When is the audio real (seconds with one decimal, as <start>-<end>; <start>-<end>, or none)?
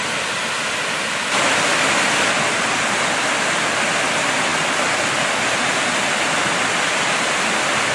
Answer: 0.0-7.9